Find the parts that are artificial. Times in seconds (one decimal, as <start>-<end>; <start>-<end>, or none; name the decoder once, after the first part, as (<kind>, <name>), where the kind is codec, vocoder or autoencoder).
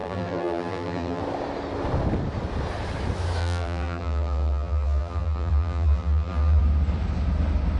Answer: 0.0-1.2 (vocoder, BigVGAN v2); 3.4-6.6